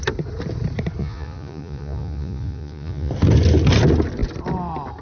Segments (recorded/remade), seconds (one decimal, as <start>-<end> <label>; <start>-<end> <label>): 0.0-1.0 recorded; 1.0-3.1 remade; 3.1-5.0 recorded